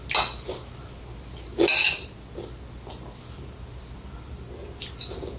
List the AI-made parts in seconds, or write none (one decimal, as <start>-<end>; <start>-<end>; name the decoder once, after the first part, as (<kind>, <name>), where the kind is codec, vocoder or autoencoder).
none